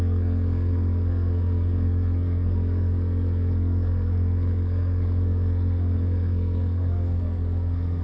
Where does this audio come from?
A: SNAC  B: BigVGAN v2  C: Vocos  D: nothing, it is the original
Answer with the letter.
A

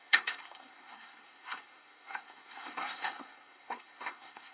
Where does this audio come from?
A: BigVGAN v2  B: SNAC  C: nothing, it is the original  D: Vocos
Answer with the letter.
B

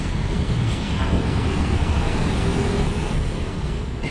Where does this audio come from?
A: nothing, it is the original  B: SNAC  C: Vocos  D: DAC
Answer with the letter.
B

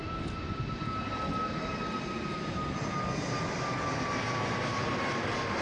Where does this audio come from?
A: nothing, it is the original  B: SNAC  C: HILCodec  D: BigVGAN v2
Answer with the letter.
A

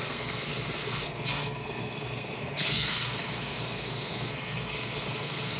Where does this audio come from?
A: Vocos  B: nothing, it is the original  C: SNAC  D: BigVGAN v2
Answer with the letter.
C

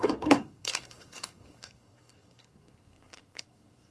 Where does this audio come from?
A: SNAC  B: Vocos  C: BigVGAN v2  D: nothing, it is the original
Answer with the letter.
A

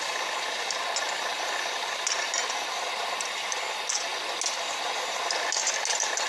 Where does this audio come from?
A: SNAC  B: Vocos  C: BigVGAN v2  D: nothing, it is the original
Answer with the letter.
D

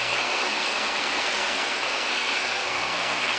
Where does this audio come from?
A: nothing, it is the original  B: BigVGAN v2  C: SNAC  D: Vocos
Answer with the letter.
C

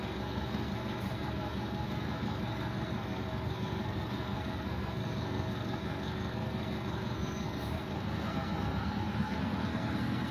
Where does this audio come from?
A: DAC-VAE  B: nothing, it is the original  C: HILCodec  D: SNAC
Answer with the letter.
D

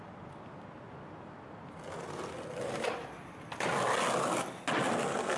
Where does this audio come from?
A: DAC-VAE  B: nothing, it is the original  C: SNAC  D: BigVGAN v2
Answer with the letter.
B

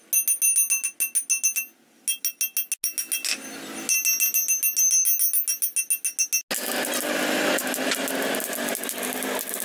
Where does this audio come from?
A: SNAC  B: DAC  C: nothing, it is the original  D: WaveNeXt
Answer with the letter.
C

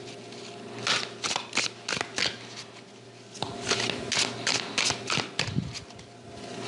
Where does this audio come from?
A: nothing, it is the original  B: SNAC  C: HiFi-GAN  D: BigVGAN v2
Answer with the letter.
A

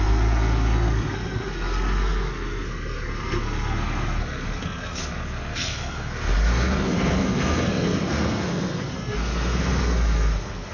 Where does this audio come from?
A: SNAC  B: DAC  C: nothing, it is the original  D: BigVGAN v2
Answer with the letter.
A